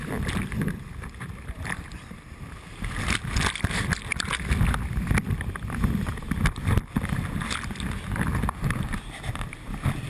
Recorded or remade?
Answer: recorded